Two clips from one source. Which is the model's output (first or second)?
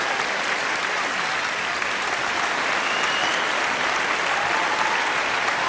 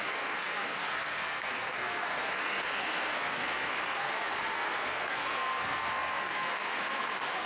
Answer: second